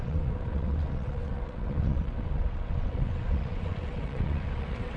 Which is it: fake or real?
fake